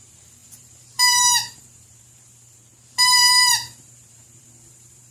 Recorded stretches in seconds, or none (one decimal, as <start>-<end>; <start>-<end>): 2.6-3.3